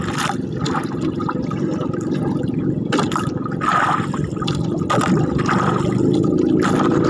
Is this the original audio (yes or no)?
yes